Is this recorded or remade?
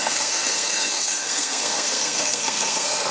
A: remade